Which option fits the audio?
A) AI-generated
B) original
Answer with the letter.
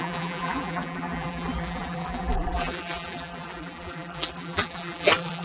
A